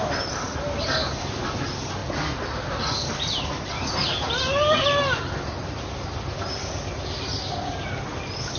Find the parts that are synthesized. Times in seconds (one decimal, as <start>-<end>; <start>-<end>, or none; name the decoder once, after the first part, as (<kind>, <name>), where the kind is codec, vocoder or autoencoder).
none